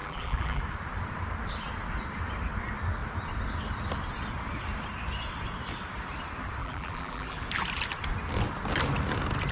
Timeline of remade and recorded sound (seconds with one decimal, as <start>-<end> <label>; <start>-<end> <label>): 0.0-0.6 remade; 0.6-6.6 recorded; 6.6-7.4 remade; 7.4-9.5 recorded